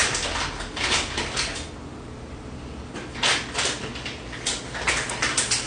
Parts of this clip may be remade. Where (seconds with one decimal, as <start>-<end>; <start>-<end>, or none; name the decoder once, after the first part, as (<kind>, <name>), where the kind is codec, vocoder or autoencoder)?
none